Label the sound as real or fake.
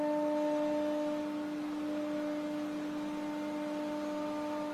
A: real